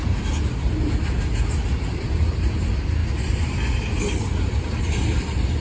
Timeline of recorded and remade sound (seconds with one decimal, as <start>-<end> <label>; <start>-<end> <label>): 0.0-5.6 recorded